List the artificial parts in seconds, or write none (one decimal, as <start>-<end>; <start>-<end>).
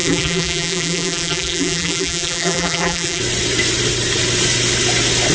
0.0-3.2